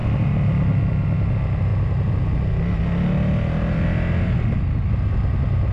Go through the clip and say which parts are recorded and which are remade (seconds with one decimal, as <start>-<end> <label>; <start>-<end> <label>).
0.0-5.7 recorded